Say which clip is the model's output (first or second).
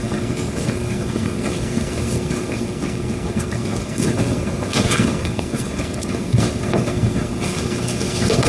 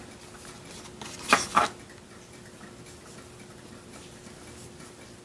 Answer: first